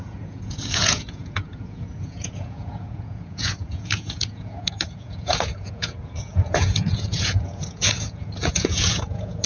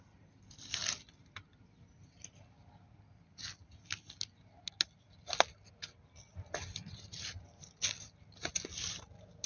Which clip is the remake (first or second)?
first